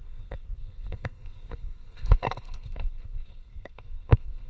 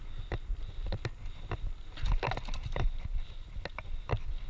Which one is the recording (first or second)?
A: second